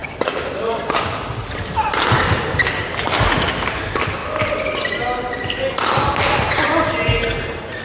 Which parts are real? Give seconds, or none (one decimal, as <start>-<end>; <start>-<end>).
0.0-7.8